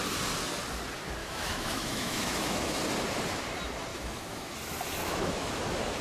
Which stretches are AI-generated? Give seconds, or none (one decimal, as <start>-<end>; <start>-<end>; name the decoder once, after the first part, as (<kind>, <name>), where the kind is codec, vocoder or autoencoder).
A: 1.2-2.8 (autoencoder, DAC-VAE); 3.9-4.5; 5.0-5.5